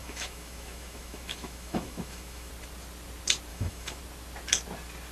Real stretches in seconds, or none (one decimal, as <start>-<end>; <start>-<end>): 2.5-3.5; 4.0-5.1